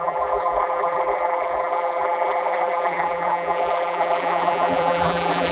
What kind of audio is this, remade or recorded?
remade